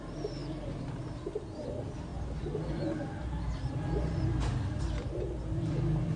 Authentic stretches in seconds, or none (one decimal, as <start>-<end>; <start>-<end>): 0.0-0.4; 1.6-6.2